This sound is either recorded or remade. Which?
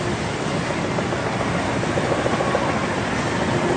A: recorded